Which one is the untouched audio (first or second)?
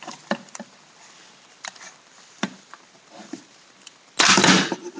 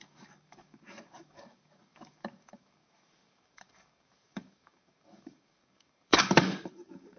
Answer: first